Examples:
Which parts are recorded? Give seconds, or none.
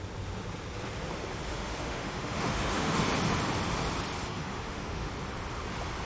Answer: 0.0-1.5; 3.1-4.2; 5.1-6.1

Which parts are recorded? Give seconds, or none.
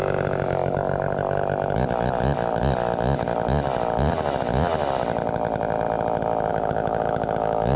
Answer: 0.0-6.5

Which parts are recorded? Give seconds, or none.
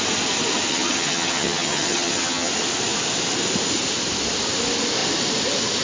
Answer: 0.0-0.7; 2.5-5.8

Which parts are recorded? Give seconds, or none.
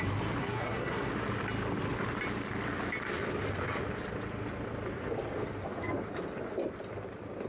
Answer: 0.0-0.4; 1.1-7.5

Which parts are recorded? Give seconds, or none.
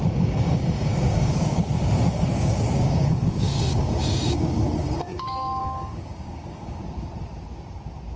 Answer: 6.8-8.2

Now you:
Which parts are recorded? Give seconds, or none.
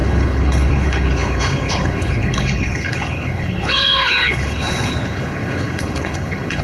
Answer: none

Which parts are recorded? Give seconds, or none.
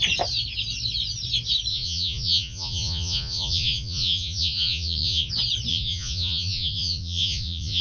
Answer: 0.0-1.7; 5.3-5.7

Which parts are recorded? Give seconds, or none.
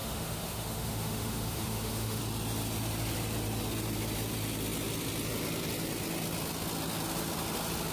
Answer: 2.2-7.9